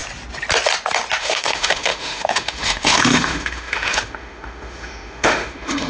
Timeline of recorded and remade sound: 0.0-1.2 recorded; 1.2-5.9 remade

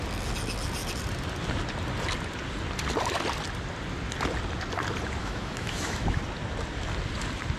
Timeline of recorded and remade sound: 0.0-5.2 recorded; 5.2-6.2 remade; 6.2-7.6 recorded

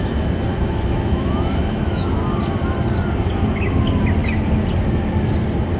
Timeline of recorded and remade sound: 0.0-0.5 recorded; 0.5-2.1 remade; 2.1-5.8 recorded

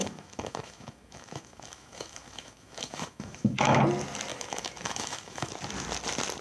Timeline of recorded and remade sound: 0.0-3.8 remade; 3.8-4.3 recorded; 4.3-5.5 remade; 5.5-6.4 recorded

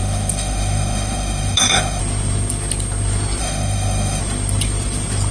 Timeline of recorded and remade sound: 0.0-2.0 remade; 2.0-3.4 recorded; 3.4-4.2 remade; 4.2-5.3 recorded

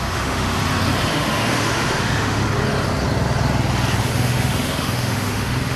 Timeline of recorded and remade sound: 0.0-0.6 remade; 0.6-1.1 recorded; 1.1-2.4 remade; 2.4-4.0 recorded; 4.0-5.8 remade

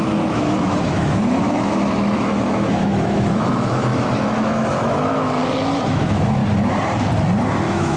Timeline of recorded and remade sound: 0.0-5.4 remade; 5.4-5.9 recorded; 5.9-6.4 remade; 6.4-7.5 recorded; 7.5-8.0 remade

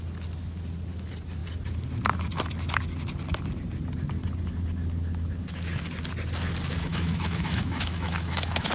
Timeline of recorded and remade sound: 0.0-6.9 recorded; 6.9-8.7 remade